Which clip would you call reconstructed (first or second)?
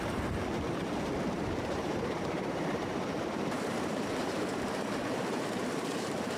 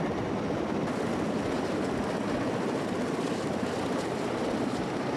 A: first